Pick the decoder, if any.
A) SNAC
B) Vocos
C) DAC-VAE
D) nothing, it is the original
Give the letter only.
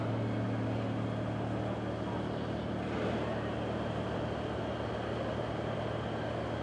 D